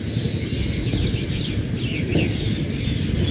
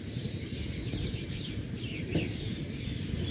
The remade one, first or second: second